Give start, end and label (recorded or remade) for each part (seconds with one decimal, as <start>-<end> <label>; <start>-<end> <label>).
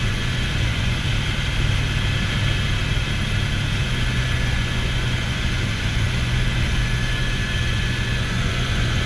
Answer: 0.0-1.1 remade; 1.1-3.8 recorded; 3.8-9.1 remade